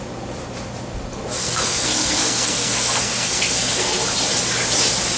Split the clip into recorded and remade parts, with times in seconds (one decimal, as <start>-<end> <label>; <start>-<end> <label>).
0.0-1.4 recorded; 1.4-4.0 remade; 4.0-5.2 recorded